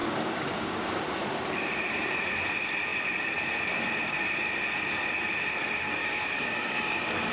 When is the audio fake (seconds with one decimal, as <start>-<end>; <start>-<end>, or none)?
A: 0.0-1.0; 6.0-7.3